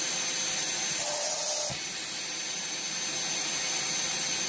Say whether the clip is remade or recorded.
recorded